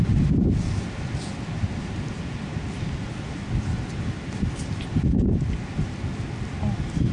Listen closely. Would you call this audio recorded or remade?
recorded